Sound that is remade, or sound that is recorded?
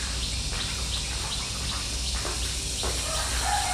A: recorded